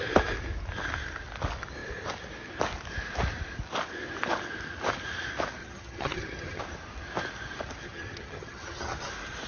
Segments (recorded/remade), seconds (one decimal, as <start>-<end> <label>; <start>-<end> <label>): 0.0-5.6 recorded; 5.6-6.6 remade; 6.6-7.8 recorded; 7.8-9.1 remade; 9.1-9.5 recorded